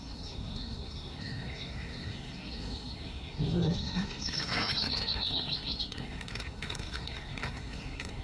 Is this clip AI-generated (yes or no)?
yes